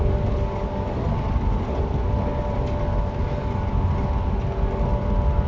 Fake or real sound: real